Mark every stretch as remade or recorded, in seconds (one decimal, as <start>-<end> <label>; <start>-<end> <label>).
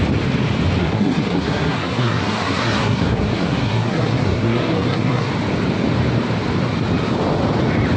0.0-0.8 recorded; 0.8-5.3 remade; 5.3-8.0 recorded